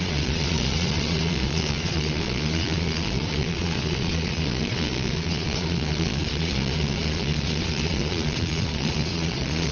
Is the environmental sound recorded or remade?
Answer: remade